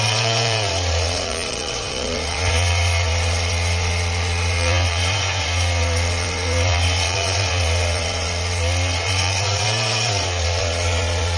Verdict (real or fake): fake